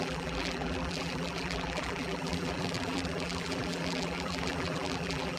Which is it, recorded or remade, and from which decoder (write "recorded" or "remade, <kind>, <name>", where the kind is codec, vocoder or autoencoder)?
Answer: remade, vocoder, BigVGAN v2